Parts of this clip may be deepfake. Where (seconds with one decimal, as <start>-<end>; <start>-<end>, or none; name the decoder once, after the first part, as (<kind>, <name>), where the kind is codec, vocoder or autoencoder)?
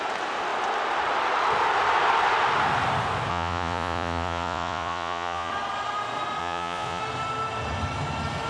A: 3.3-5.5 (vocoder, Vocos); 6.4-7.0